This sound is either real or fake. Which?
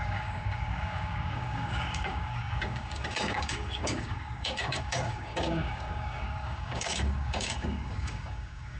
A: fake